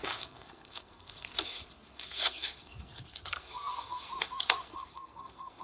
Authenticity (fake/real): fake